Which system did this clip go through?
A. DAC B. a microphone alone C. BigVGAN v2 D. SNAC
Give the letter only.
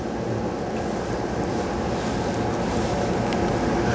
B